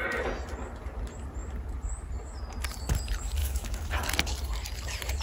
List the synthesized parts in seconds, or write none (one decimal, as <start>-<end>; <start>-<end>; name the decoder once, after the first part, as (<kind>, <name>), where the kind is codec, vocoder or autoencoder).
3.4-3.9 (autoencoder, DAC-VAE)